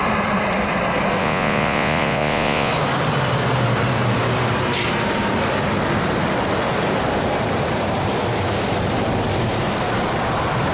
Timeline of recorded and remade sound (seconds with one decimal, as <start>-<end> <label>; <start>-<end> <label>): 0.0-1.2 recorded; 1.2-2.7 remade; 2.7-10.7 recorded